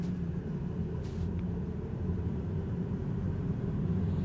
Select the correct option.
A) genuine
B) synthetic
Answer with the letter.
B